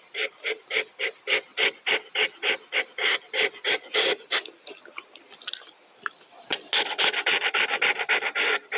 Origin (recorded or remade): recorded